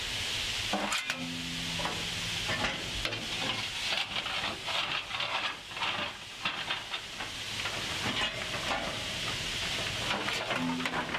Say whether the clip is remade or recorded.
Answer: recorded